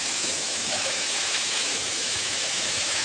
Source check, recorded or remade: remade